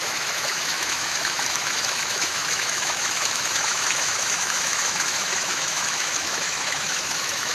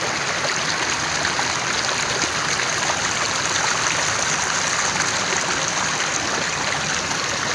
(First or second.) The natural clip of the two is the second